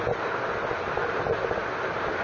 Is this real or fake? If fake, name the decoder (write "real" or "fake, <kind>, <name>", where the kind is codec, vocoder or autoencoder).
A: real